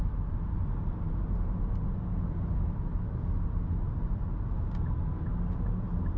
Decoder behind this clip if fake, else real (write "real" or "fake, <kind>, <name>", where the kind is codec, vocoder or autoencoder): real